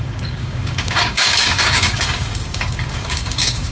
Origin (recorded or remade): remade